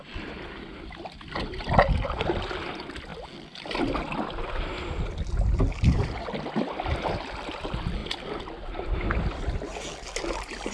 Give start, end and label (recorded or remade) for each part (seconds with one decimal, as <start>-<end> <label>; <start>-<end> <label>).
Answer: 0.0-10.7 recorded